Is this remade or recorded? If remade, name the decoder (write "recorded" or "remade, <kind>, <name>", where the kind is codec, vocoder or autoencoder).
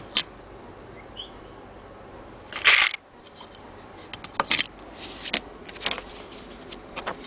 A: recorded